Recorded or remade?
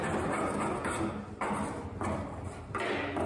recorded